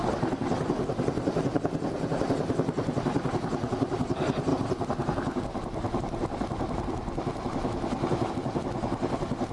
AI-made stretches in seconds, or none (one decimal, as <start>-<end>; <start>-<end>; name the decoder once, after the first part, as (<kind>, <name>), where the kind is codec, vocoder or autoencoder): none